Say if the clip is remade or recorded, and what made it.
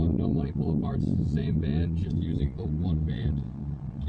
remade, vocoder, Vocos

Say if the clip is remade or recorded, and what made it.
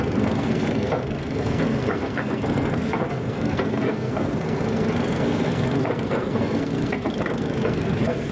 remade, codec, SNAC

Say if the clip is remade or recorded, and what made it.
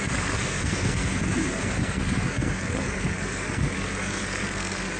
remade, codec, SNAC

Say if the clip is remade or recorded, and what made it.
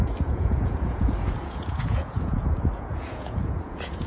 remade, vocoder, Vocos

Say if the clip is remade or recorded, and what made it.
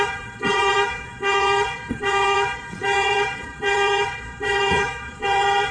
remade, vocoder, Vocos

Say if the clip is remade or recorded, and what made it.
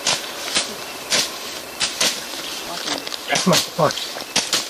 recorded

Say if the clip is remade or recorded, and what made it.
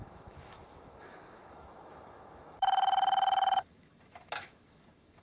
remade, autoencoder, DAC-VAE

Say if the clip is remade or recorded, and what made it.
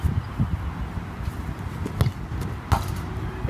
recorded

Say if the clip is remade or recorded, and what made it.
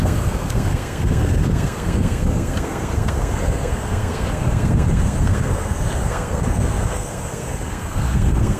remade, codec, SNAC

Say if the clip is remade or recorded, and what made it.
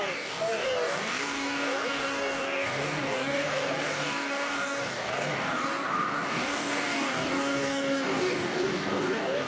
remade, codec, DAC